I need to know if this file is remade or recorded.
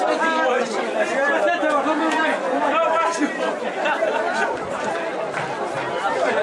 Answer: remade